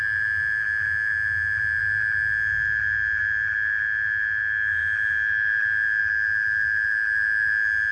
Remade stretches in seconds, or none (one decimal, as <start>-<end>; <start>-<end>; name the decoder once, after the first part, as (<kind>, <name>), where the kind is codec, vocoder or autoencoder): none